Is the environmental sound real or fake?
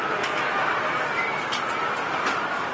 real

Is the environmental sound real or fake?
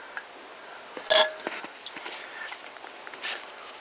real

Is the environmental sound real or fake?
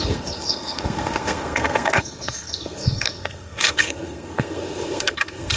fake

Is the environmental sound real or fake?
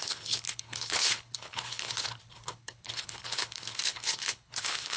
fake